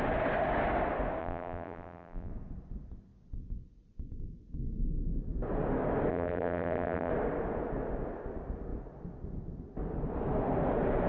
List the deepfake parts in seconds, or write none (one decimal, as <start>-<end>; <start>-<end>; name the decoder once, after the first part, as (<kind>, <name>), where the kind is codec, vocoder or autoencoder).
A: 1.2-2.3 (vocoder, BigVGAN v2); 6.1-7.1